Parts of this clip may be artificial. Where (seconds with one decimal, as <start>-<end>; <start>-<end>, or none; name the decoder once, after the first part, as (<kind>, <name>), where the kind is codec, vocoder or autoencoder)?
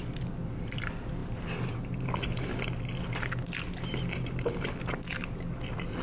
none